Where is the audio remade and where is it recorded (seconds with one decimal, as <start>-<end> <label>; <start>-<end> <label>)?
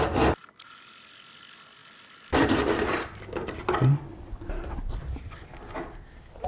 0.0-6.5 recorded